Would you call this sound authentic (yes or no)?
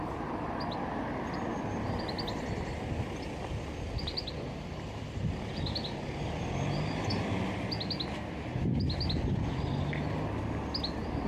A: yes